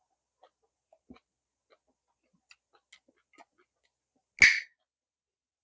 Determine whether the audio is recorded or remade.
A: recorded